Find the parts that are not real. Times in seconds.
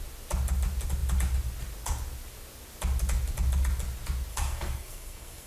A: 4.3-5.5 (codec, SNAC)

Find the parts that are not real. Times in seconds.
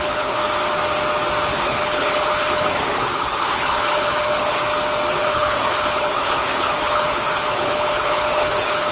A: 0.0-0.4 (codec, HILCodec); 1.5-4.6; 5.1-8.9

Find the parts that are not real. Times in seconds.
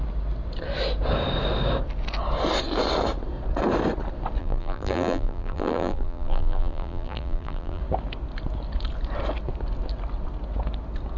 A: 4.4-7.8 (vocoder, BigVGAN v2)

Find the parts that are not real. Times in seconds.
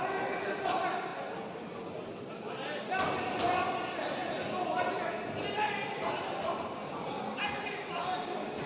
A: none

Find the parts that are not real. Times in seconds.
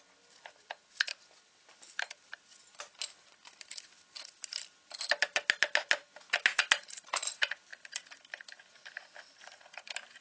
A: none